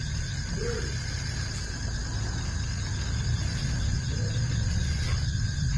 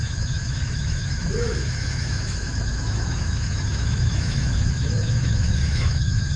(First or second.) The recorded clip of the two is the first